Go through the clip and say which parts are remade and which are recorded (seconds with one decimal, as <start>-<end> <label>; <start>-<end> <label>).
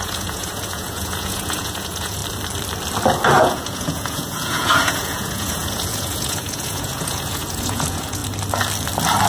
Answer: 0.0-2.2 remade; 2.2-3.4 recorded; 3.4-8.2 remade; 8.2-9.3 recorded